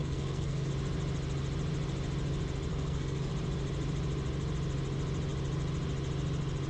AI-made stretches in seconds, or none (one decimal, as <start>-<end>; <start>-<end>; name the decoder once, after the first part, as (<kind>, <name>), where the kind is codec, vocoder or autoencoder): 0.0-0.7 (codec, SNAC); 2.7-3.3